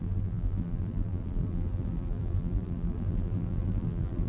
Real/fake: fake